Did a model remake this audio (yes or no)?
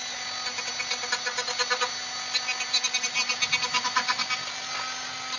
no